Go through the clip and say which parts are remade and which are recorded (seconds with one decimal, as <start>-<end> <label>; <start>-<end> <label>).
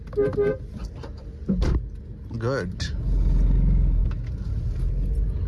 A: 0.0-0.5 recorded; 0.5-2.0 remade; 2.0-5.5 recorded